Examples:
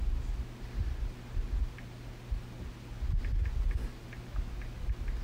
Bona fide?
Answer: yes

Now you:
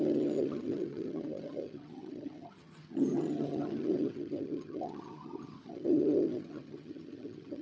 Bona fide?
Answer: no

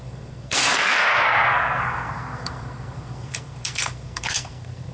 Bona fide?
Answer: no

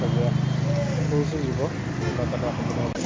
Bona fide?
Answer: yes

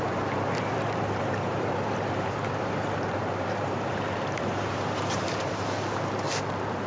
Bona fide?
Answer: no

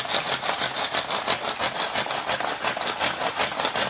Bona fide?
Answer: yes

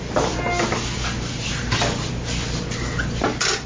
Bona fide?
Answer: yes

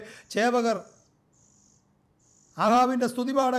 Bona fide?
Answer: no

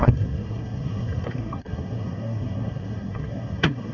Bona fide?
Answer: no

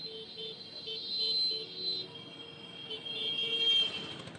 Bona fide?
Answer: yes